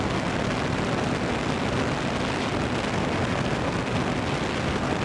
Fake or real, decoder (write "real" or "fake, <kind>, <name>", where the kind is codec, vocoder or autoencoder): real